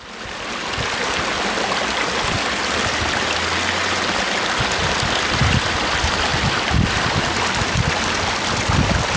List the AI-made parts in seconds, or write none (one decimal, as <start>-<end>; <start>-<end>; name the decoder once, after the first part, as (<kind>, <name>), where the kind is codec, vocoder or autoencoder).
none